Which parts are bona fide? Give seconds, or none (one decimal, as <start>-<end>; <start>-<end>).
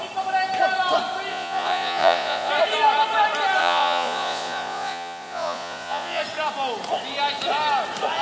0.0-1.3; 2.5-3.6; 6.2-8.2